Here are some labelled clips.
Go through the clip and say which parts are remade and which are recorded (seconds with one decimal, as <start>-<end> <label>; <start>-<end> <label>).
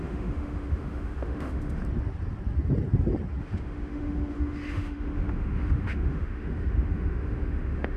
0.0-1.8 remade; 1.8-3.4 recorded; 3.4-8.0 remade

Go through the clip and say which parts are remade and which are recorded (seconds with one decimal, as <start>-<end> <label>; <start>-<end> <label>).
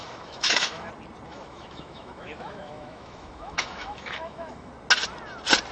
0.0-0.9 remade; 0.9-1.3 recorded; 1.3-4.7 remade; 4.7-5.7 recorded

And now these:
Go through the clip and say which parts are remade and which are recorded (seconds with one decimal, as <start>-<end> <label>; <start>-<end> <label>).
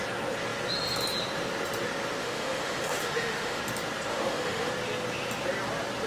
0.0-2.2 recorded; 2.2-3.6 remade; 3.6-4.1 recorded; 4.1-4.7 remade; 4.7-6.1 recorded